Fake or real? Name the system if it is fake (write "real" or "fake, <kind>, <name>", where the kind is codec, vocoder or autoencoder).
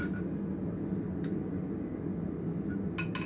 real